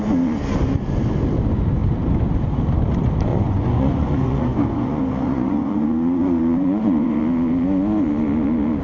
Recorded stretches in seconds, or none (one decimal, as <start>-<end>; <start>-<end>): 0.0-3.3; 7.2-8.8